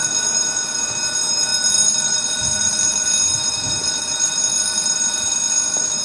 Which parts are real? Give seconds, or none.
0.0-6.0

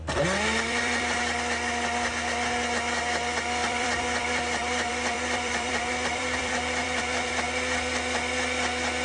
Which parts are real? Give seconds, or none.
0.0-0.5; 1.2-3.6; 7.3-9.0

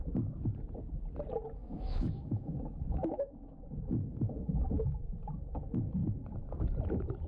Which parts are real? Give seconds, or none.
0.0-1.6; 5.0-7.3

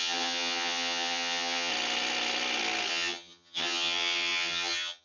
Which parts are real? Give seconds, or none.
1.7-2.9